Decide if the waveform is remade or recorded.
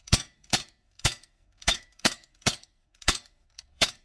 remade